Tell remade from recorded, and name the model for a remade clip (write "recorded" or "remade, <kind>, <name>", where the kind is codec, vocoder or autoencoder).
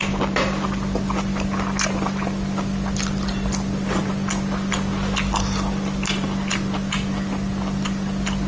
recorded